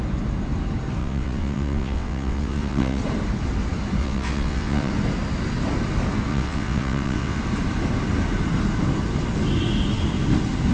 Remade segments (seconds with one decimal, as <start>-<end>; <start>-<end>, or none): 1.0-3.0; 4.0-4.9; 6.3-7.4

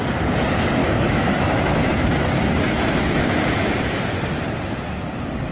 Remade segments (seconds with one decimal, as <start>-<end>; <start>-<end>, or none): 0.8-4.1

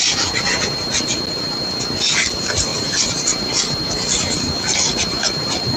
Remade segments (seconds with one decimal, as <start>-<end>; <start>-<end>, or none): none

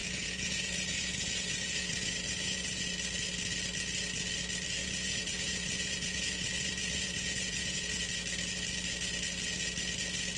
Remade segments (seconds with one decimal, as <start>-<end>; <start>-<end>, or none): 0.0-2.8; 4.8-8.0